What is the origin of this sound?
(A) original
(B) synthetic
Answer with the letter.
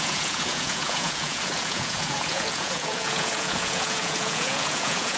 B